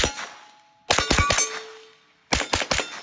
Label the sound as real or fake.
real